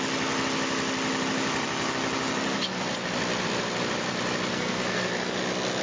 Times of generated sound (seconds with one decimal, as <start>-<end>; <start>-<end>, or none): 4.5-5.1